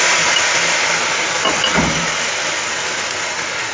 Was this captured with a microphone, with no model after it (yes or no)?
yes